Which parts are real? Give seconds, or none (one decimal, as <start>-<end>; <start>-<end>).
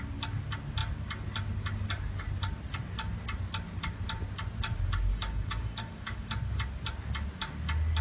0.0-5.1; 6.3-8.0